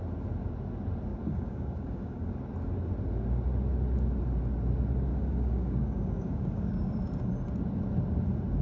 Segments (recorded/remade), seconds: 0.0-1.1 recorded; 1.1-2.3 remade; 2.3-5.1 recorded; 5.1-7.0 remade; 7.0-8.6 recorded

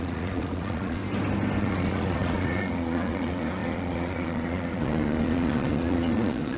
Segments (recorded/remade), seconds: 0.0-1.0 remade; 1.0-1.6 recorded; 1.6-6.6 remade